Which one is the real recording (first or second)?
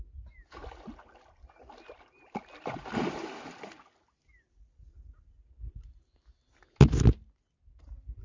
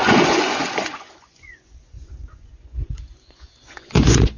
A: first